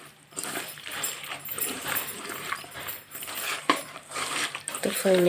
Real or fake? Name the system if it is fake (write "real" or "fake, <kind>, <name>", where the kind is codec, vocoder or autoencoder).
fake, vocoder, BigVGAN v2